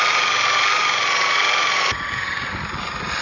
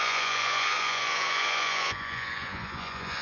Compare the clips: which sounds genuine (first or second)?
first